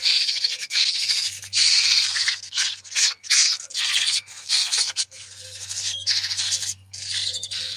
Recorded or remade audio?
remade